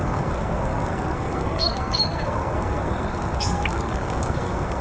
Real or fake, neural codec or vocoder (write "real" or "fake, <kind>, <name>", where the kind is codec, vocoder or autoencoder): fake, codec, SNAC